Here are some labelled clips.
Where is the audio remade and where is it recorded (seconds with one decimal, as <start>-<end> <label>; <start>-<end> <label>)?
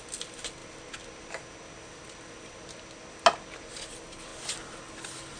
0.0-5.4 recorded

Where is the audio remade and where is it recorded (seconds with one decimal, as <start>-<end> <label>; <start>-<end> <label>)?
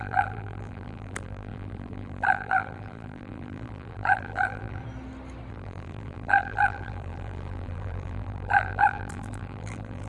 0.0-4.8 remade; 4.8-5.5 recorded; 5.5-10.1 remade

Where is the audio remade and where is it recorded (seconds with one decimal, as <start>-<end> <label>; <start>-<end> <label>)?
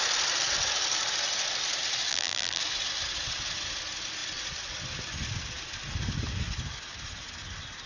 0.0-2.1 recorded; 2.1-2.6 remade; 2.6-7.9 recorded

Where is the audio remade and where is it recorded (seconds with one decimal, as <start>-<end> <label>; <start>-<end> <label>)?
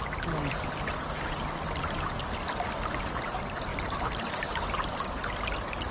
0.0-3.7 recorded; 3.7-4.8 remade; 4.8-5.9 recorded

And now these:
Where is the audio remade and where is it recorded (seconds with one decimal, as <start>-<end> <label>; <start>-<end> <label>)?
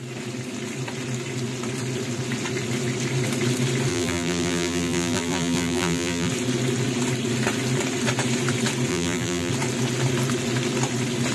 0.0-3.9 recorded; 3.9-6.3 remade; 6.3-8.9 recorded; 8.9-9.5 remade; 9.5-11.3 recorded